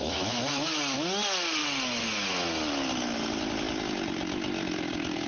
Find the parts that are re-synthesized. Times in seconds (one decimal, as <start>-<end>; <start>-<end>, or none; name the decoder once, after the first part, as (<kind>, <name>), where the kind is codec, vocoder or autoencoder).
0.0-0.8 (autoencoder, DAC-VAE)